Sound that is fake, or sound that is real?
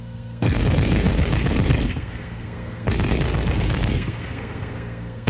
fake